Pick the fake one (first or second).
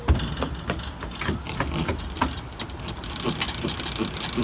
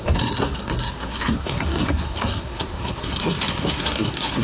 second